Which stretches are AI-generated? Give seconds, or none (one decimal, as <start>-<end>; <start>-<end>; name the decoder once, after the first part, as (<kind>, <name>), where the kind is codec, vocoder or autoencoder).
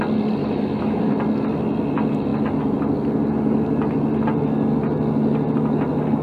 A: 0.4-1.1 (autoencoder, DAC-VAE)